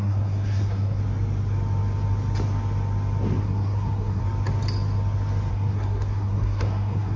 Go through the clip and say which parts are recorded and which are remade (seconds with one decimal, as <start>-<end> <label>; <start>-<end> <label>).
0.0-1.0 remade; 1.0-3.4 recorded; 3.4-4.2 remade; 4.2-5.5 recorded; 5.5-7.2 remade